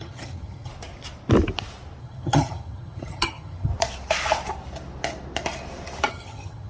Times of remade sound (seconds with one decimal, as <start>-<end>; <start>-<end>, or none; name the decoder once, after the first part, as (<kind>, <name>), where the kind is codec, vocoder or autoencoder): 0.0-0.7 (vocoder, HiFi-GAN); 2.0-3.7; 6.1-6.7